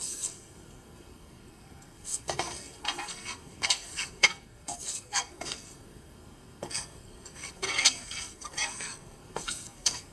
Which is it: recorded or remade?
remade